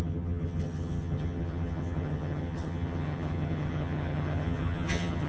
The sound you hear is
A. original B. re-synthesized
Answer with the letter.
B